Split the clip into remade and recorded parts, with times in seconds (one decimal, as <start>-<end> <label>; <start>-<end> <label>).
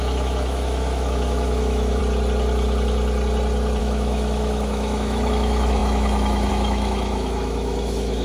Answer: 0.0-2.0 remade; 2.0-3.8 recorded; 3.8-8.2 remade